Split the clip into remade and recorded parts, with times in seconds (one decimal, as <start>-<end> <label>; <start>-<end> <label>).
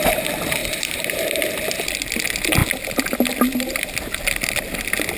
0.0-0.6 recorded; 0.6-1.2 remade; 1.2-5.2 recorded